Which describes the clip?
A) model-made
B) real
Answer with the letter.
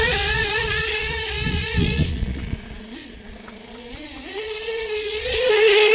A